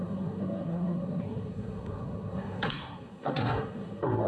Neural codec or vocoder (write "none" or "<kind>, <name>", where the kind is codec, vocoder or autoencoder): codec, SNAC